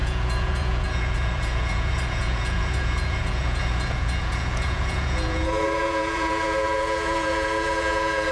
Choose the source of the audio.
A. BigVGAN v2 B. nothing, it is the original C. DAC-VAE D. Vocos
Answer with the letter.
D